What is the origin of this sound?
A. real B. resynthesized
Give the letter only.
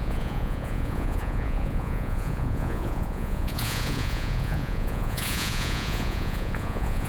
B